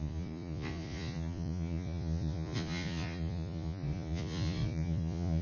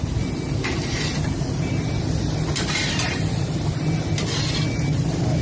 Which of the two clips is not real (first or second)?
first